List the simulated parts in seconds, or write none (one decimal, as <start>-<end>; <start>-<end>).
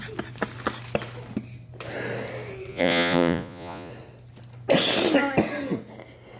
2.7-3.9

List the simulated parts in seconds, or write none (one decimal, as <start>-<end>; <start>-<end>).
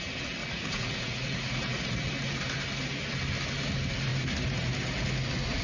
0.4-2.1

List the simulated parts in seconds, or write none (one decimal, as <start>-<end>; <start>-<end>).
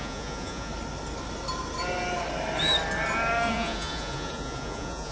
0.0-0.7; 3.5-5.1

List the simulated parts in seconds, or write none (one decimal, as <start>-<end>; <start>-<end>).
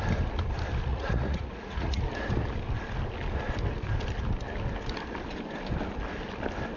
0.9-2.0